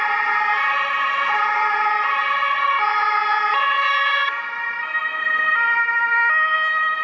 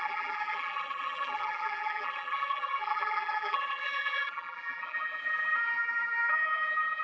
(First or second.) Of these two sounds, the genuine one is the first